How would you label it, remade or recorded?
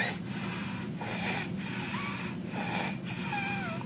recorded